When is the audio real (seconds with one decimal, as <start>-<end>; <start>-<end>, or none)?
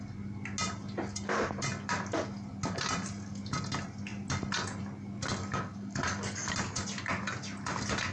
0.0-5.4; 6.5-8.1